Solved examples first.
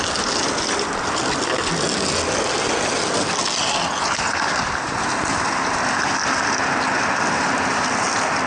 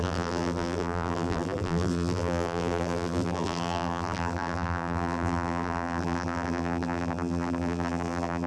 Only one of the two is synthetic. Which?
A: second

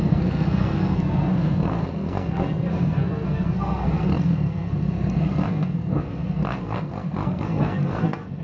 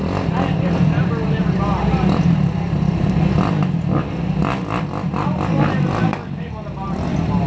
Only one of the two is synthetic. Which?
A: first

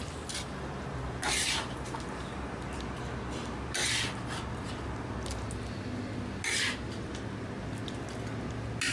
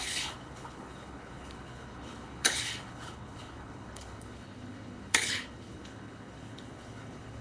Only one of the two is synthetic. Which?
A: second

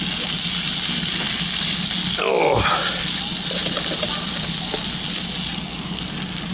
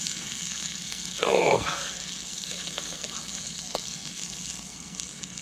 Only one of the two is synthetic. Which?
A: second